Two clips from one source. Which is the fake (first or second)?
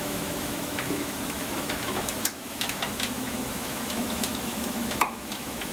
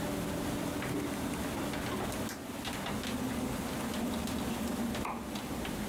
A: first